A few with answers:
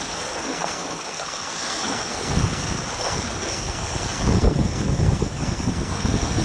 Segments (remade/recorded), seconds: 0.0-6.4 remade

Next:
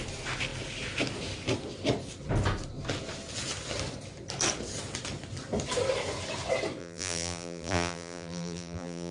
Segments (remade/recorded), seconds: 0.0-6.8 recorded; 6.8-9.1 remade

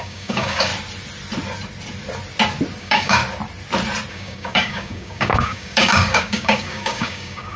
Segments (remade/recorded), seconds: 0.0-0.7 remade; 0.7-2.8 recorded; 2.8-3.2 remade; 3.2-4.1 recorded; 4.1-7.6 remade

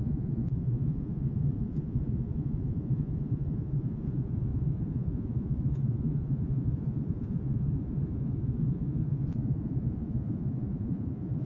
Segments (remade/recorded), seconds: 0.0-11.5 remade